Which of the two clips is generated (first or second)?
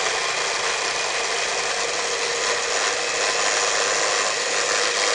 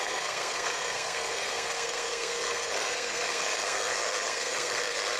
second